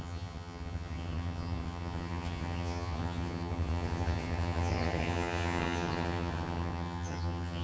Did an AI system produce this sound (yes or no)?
yes